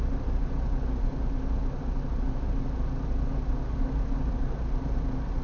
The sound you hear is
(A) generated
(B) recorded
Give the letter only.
B